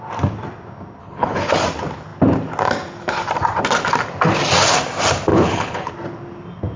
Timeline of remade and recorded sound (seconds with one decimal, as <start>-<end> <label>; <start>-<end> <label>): 0.0-1.0 recorded; 1.0-1.5 remade; 1.5-5.3 recorded; 5.3-5.9 remade; 5.9-6.8 recorded